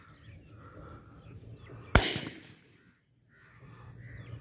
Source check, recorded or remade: recorded